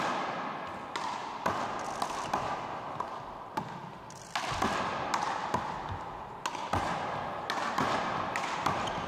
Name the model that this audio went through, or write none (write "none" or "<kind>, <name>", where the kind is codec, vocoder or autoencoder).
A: none